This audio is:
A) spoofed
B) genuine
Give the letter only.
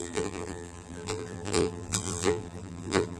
A